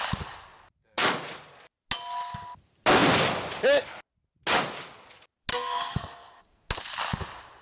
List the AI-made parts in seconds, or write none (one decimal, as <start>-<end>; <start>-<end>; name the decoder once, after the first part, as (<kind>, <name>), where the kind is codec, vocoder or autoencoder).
5.5-6.7 (codec, SNAC)